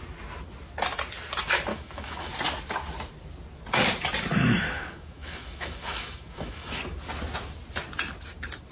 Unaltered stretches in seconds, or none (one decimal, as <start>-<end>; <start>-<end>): 0.0-1.7; 2.3-4.3; 6.8-8.7